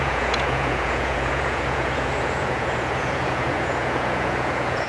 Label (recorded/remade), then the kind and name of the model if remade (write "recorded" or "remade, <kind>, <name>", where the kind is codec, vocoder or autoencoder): remade, vocoder, Vocos